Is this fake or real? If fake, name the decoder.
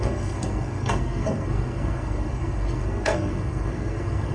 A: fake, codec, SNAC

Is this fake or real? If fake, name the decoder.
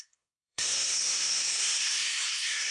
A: fake, codec, SNAC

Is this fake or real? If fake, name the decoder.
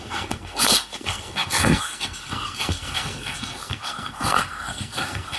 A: fake, codec, SNAC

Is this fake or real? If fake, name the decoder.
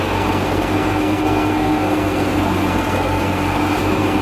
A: fake, codec, SNAC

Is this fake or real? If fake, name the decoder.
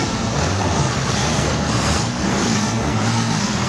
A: fake, codec, SNAC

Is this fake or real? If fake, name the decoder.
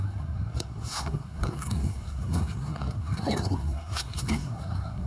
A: fake, codec, SNAC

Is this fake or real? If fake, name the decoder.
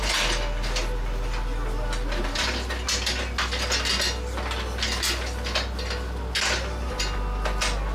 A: real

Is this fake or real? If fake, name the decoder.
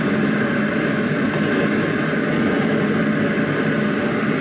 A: real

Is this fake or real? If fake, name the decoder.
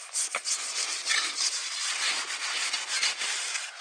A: real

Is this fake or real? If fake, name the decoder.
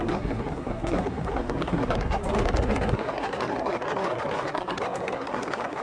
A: fake, codec, SNAC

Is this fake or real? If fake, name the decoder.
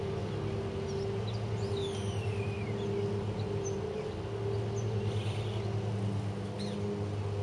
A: real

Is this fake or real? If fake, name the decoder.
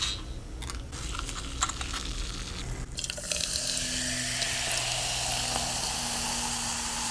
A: real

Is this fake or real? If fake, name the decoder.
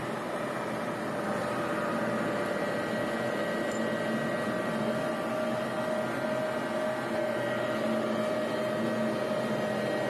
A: real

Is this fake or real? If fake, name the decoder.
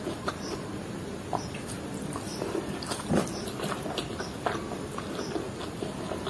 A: real